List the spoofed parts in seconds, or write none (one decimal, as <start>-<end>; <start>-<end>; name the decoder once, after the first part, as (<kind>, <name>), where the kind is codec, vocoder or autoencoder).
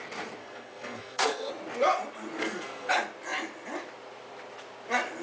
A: 0.4-1.5 (codec, SNAC); 2.4-2.9